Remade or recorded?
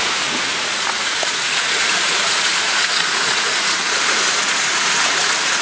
remade